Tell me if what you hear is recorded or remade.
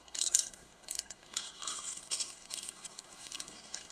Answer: remade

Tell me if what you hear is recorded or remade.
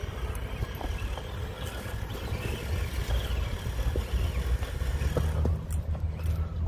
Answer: recorded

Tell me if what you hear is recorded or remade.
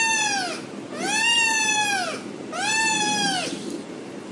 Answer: recorded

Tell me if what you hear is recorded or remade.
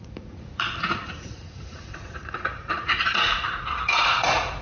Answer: remade